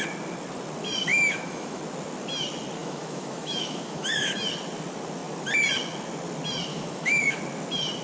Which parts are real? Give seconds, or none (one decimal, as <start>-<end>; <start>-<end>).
0.0-1.1; 1.8-2.8; 4.5-6.7; 7.4-8.0